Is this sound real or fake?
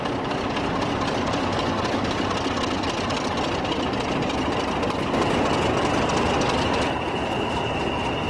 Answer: real